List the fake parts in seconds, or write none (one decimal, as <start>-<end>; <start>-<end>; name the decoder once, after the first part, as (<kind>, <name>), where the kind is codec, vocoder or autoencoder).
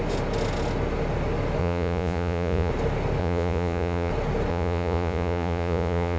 1.6-2.7 (vocoder, Vocos); 3.2-4.1; 4.5-6.2